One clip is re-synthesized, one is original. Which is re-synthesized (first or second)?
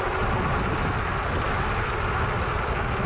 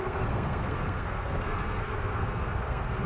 second